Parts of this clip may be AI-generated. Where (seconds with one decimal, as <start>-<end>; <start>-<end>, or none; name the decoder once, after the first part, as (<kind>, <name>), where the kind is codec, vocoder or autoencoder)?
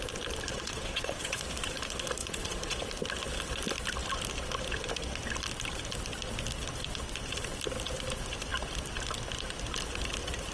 0.5-1.4 (vocoder, Vocos); 2.2-2.8